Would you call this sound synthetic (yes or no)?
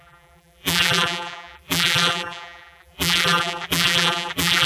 yes